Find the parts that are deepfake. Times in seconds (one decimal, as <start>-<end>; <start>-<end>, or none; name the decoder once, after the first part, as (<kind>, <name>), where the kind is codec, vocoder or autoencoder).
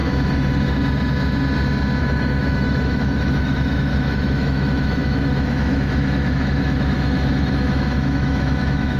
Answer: 2.0-9.0 (autoencoder, DAC-VAE)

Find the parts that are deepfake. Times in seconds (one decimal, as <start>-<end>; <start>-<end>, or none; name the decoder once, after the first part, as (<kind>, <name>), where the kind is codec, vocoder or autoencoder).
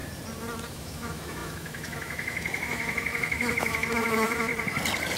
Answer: 0.7-4.5 (autoencoder, DAC-VAE)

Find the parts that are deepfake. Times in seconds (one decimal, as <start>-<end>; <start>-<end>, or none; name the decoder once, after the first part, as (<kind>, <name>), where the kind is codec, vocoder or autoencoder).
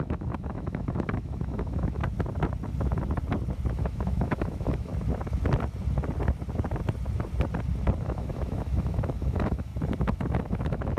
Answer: 0.0-2.0 (autoencoder, DAC-VAE); 3.7-4.9; 8.0-9.7; 10.4-11.0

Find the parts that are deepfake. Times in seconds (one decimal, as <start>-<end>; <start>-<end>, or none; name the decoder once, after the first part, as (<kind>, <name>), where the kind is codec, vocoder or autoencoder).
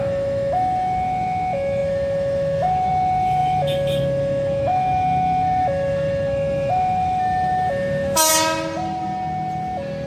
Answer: 0.0-8.3 (autoencoder, DAC-VAE)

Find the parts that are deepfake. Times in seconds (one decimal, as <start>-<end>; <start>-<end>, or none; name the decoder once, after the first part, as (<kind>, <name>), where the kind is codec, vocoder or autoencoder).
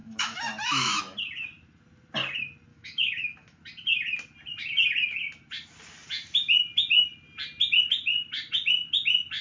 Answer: 0.0-1.0 (autoencoder, DAC-VAE); 2.7-3.6